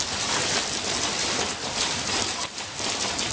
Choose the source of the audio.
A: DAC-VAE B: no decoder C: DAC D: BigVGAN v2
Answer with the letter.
B